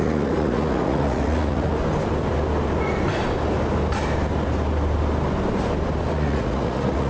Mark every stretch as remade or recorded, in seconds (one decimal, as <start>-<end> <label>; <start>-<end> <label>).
0.0-1.8 remade; 1.8-6.1 recorded; 6.1-7.1 remade